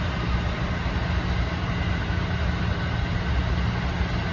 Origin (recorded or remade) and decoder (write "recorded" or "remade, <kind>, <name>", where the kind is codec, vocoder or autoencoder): recorded